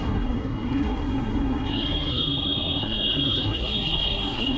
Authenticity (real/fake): fake